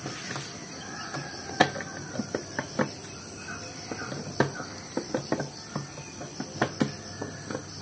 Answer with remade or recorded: recorded